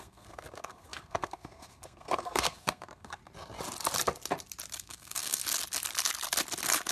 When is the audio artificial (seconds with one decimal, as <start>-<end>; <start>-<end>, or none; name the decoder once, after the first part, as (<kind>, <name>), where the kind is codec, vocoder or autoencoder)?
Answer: 0.0-3.2 (codec, SNAC); 4.8-5.4